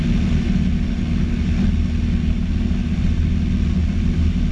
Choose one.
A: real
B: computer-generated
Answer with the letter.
A